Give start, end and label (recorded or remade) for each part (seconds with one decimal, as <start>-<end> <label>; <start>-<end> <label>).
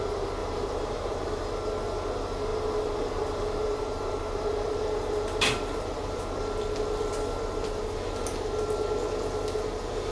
0.0-0.4 recorded; 0.4-1.4 remade; 1.4-2.5 recorded; 2.5-6.2 remade; 6.2-10.1 recorded